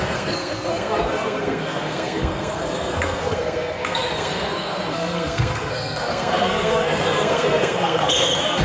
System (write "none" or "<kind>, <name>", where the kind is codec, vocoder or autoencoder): codec, SNAC